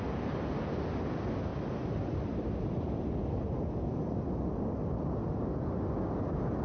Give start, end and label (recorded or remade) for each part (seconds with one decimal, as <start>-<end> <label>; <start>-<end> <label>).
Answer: 0.0-6.6 recorded